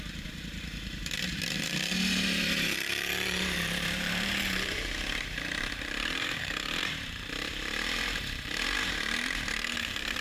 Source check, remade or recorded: remade